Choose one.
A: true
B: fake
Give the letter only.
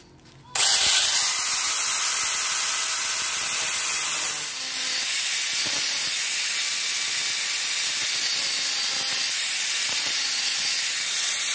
A